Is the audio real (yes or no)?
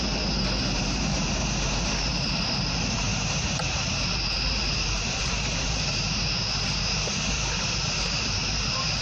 no